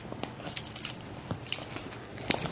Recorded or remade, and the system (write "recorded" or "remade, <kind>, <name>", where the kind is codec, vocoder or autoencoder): recorded